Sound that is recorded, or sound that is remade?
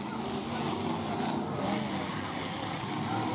recorded